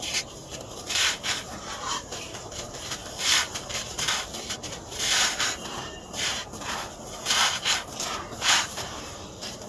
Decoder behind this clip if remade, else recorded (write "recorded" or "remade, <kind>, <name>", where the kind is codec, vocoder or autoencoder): remade, vocoder, BigVGAN v2